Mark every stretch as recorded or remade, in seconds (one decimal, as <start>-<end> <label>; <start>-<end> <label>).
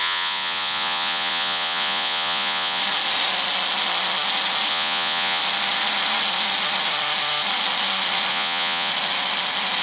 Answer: 0.0-2.8 remade; 2.8-4.7 recorded; 4.7-5.4 remade; 5.4-8.3 recorded; 8.3-8.9 remade; 8.9-9.8 recorded